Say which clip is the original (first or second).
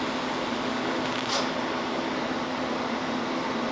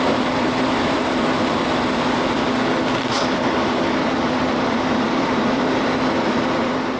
first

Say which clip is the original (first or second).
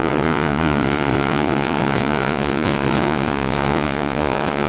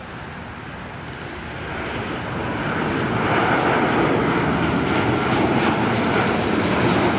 second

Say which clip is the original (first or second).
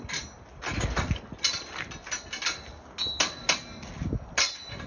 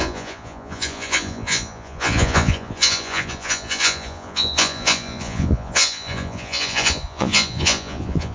first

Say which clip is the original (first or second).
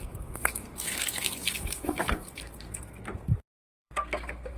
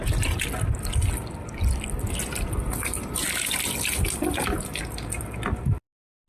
second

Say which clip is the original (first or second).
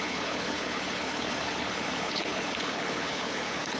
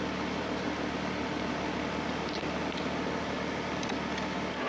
second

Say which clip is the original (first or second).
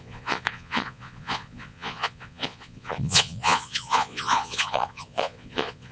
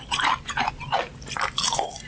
second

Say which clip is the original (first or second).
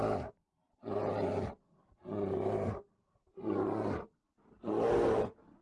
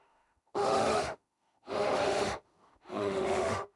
first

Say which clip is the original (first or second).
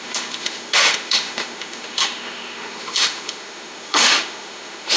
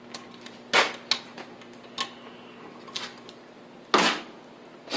second